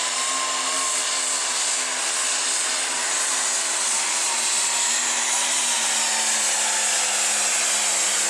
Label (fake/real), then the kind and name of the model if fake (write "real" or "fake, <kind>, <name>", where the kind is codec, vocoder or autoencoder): real